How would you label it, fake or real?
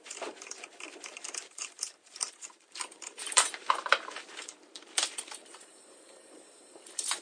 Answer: fake